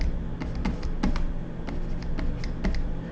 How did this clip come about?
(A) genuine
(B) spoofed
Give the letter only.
A